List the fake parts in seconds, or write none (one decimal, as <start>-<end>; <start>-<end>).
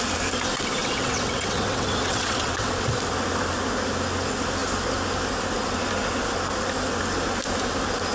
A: 0.8-2.7